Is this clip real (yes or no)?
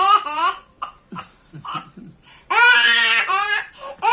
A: no